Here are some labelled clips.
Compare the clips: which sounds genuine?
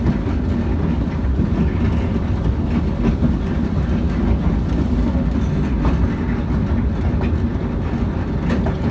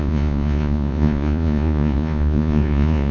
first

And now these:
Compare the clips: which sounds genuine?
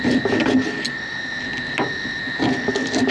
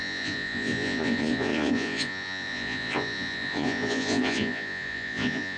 first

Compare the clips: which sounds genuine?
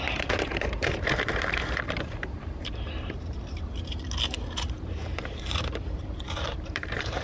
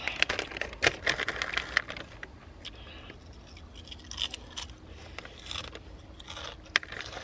second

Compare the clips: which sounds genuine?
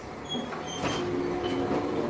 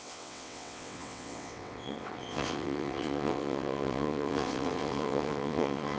first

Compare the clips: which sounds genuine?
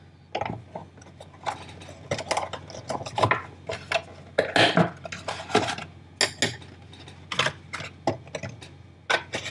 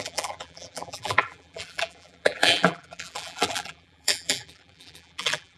first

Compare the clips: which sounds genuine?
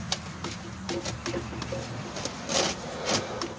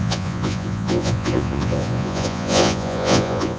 first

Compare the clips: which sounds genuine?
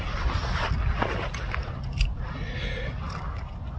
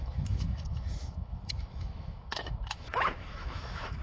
first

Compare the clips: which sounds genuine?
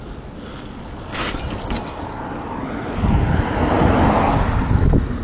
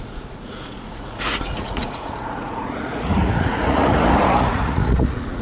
first